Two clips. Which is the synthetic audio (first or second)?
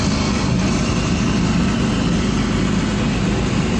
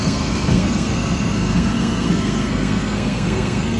second